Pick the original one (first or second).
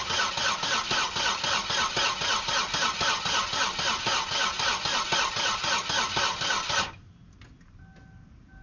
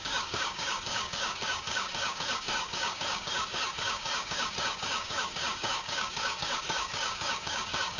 first